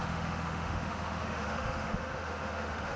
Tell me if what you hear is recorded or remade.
remade